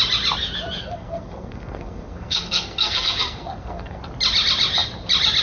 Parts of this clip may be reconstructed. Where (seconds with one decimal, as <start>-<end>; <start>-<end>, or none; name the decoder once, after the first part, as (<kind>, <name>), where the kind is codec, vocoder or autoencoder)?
0.8-4.0 (codec, SNAC)